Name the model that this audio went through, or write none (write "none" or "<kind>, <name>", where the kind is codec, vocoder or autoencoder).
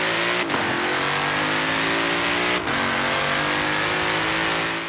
none